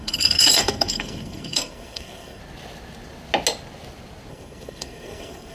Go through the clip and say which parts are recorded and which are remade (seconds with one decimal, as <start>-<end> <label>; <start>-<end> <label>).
0.0-2.4 remade; 2.4-4.3 recorded; 4.3-5.5 remade